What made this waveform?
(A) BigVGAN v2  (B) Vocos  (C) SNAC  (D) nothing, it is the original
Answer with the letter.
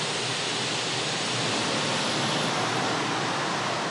D